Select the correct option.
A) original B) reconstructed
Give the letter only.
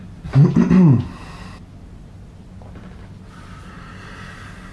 A